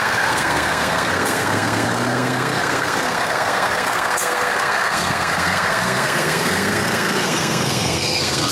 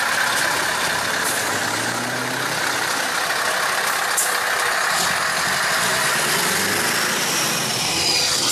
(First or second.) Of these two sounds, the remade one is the first